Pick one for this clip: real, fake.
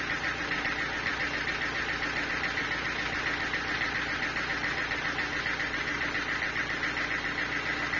real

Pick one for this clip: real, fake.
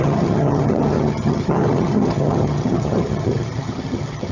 fake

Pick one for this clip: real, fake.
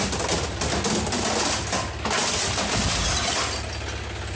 real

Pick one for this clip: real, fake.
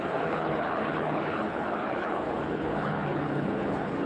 fake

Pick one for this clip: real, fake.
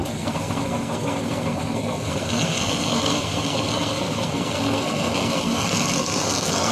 fake